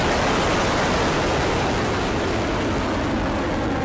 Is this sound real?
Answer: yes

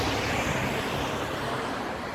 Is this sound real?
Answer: yes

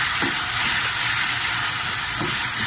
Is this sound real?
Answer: no